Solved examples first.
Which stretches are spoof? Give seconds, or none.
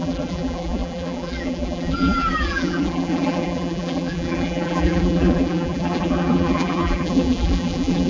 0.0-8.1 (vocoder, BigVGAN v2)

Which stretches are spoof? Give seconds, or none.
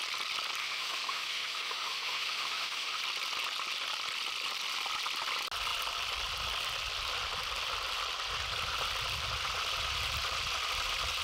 0.6-3.0 (autoencoder, DAC-VAE)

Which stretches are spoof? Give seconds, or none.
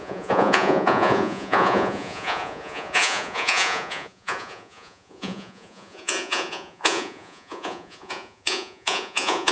0.0-9.5 (vocoder, Vocos)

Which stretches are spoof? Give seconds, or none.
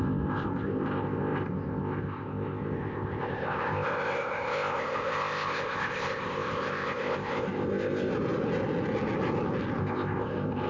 0.0-8.1 (codec, ZipCodec); 9.8-10.7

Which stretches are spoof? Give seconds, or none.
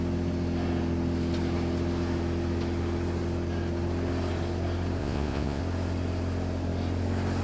5.0-5.6 (vocoder, Vocos)